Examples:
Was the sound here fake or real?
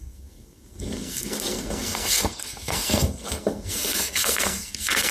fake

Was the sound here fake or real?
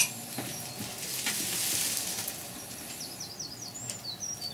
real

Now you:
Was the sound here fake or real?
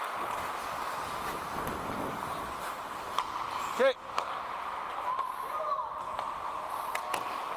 real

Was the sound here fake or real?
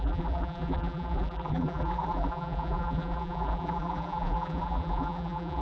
fake